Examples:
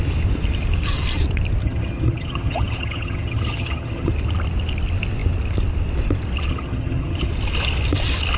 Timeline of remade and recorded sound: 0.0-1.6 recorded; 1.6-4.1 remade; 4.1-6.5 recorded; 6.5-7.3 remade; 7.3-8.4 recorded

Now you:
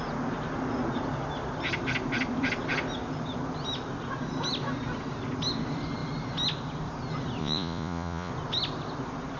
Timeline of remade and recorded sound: 0.0-7.4 recorded; 7.4-8.3 remade; 8.3-9.4 recorded

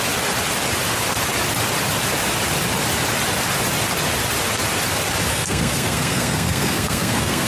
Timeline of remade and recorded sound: 0.0-5.3 recorded; 5.3-7.5 remade

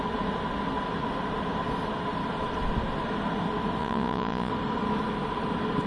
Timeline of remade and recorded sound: 0.0-3.8 recorded; 3.8-4.5 remade; 4.5-5.9 recorded

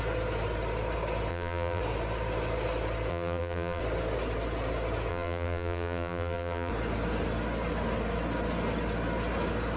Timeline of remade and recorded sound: 0.0-1.3 recorded; 1.3-1.8 remade; 1.8-3.1 recorded; 3.1-3.8 remade; 3.8-5.1 recorded; 5.1-6.7 remade; 6.7-9.8 recorded

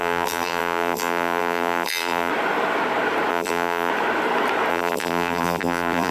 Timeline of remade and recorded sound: 0.0-2.3 remade; 2.3-3.3 recorded; 3.3-3.9 remade; 3.9-4.7 recorded; 4.7-6.1 remade

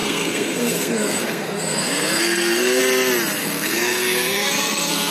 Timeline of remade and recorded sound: 0.0-2.8 remade; 2.8-3.4 recorded; 3.4-5.1 remade

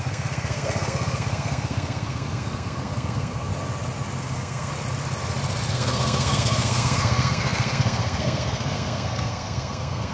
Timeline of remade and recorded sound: 0.0-3.5 remade; 3.5-4.2 recorded; 4.2-4.7 remade; 4.7-5.7 recorded; 5.7-10.1 remade